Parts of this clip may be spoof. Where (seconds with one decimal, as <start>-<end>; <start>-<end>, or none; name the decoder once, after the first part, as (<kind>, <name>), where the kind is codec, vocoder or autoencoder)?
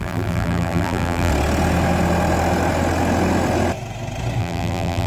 0.0-1.3 (vocoder, BigVGAN v2); 4.4-5.1